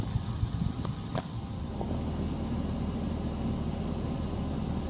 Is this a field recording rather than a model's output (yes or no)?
yes